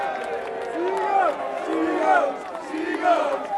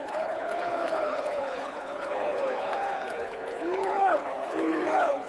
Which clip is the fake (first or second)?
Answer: second